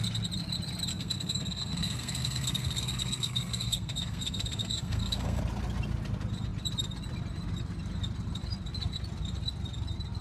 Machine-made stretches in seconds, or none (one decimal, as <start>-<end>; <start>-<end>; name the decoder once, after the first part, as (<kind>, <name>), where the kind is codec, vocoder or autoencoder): 0.9-5.4 (codec, SNAC)